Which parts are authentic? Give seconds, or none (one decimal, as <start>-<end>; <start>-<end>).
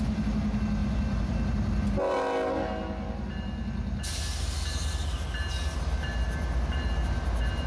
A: 0.0-7.7